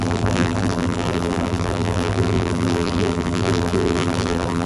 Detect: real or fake fake